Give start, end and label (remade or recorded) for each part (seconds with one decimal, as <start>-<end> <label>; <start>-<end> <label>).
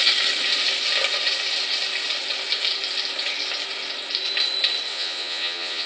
0.0-4.9 recorded; 4.9-5.9 remade